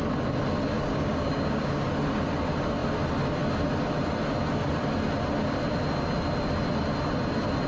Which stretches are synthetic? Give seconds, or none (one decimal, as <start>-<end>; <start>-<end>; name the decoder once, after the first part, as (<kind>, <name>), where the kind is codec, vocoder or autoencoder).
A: 0.8-1.8 (codec, DAC)